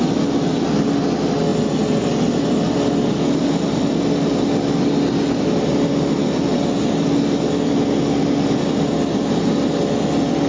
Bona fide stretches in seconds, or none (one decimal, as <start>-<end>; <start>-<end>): 0.0-10.5